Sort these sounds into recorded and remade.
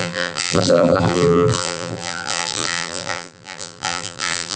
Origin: remade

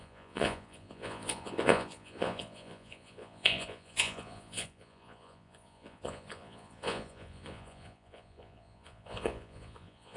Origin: remade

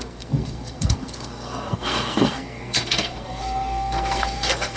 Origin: remade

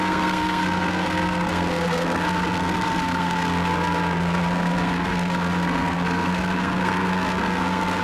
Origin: remade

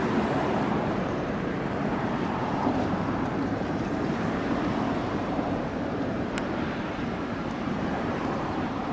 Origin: remade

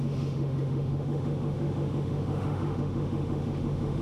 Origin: remade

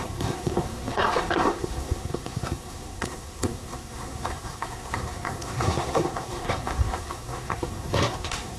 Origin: remade